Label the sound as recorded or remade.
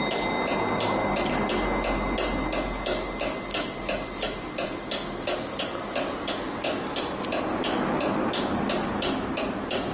recorded